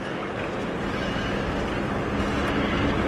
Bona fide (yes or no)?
yes